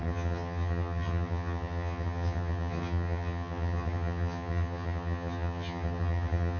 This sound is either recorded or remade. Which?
remade